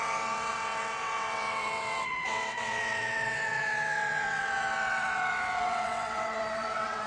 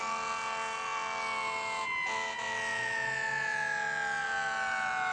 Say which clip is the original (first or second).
second